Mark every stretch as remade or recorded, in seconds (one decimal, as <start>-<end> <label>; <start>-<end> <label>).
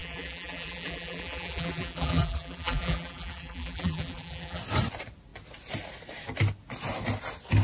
0.0-4.6 remade; 4.6-7.6 recorded